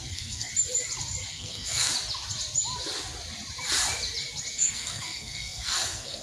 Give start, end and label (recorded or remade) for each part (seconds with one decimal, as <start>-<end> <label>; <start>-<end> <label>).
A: 0.0-0.5 remade; 0.5-1.3 recorded; 1.3-1.9 remade; 1.9-4.5 recorded; 4.5-6.2 remade